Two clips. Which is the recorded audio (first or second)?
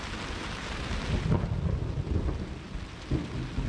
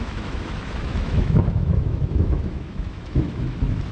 first